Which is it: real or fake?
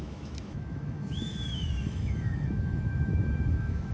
fake